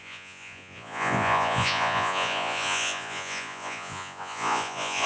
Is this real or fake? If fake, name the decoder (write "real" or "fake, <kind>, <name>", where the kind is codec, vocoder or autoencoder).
fake, vocoder, Vocos